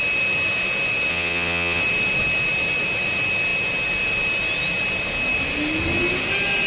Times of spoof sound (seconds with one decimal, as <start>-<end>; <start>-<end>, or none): 1.1-1.8